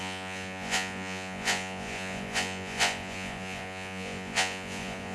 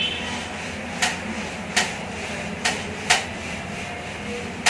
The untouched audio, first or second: second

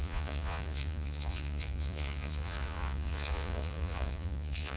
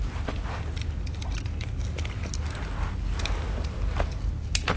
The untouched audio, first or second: second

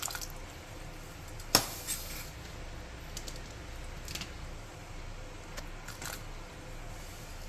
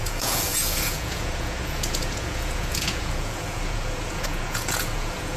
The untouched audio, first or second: first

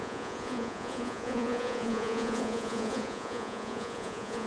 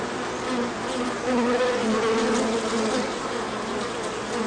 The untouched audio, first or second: second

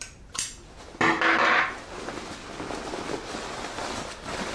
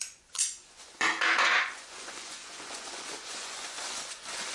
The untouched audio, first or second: first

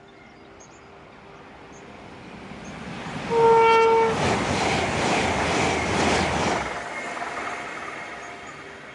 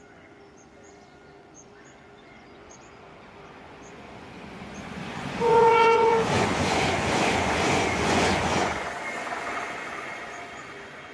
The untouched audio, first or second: first